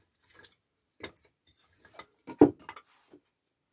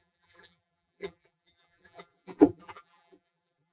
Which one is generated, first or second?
second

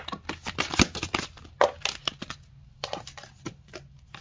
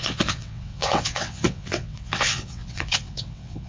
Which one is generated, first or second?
second